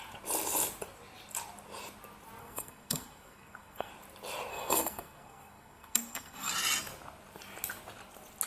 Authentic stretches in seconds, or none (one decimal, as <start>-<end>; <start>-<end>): 0.0-2.4; 3.9-4.5; 6.5-8.5